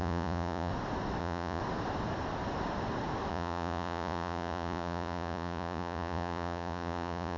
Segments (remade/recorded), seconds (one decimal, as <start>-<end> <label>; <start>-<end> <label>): 0.0-0.7 remade; 0.7-1.2 recorded; 1.2-1.6 remade; 1.6-3.3 recorded; 3.3-7.4 remade